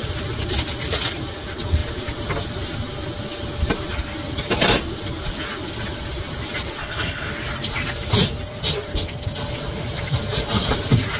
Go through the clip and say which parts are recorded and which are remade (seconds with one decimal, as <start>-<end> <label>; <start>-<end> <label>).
0.0-6.8 recorded; 6.8-7.3 remade; 7.3-11.2 recorded

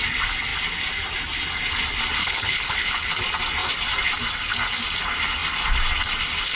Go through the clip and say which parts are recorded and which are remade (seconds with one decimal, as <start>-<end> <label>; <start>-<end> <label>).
0.0-2.2 recorded; 2.2-3.1 remade; 3.1-6.6 recorded

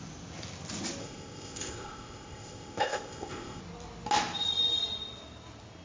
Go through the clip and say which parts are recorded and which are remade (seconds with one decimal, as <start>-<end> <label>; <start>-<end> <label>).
0.0-1.0 recorded; 1.0-3.6 remade; 3.6-5.8 recorded

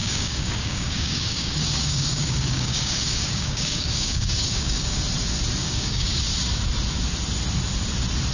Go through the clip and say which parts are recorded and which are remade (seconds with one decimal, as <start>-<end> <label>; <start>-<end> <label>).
0.0-5.0 remade; 5.0-5.6 recorded; 5.6-6.2 remade; 6.2-8.3 recorded

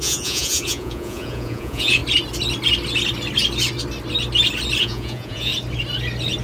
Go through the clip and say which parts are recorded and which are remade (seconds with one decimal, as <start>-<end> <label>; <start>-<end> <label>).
0.0-2.0 remade; 2.0-4.8 recorded; 4.8-5.5 remade; 5.5-6.4 recorded

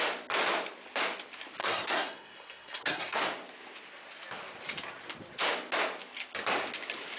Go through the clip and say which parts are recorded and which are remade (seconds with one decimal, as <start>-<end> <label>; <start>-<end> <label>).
0.0-1.6 recorded; 1.6-3.2 remade; 3.2-7.2 recorded

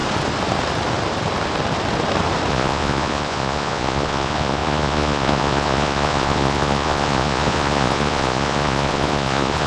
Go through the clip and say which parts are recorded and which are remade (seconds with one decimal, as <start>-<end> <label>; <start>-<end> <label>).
0.0-2.5 recorded; 2.5-9.7 remade